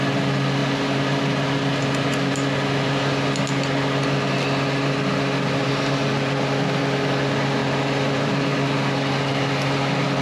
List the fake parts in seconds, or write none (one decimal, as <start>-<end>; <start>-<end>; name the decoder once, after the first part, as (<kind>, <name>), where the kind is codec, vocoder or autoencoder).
7.6-8.3 (vocoder, BigVGAN v2)